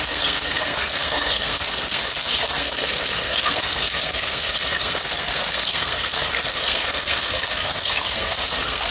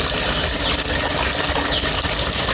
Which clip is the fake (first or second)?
first